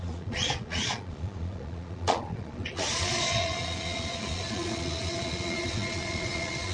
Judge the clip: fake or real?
fake